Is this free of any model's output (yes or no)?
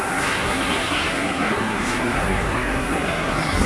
no